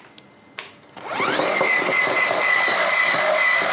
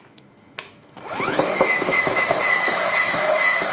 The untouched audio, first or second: first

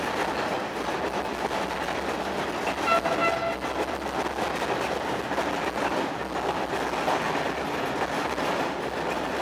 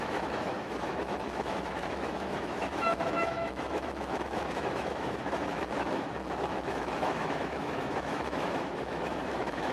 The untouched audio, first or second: first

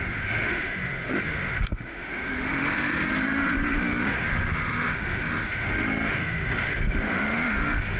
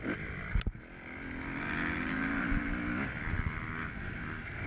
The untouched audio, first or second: second